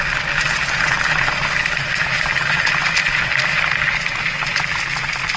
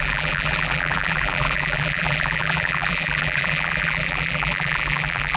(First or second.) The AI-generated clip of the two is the second